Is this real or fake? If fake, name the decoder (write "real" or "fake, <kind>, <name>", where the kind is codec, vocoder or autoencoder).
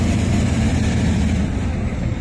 real